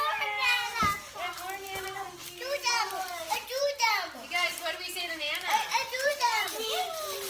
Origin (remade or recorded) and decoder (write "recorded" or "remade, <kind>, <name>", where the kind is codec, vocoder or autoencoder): remade, vocoder, BigVGAN v2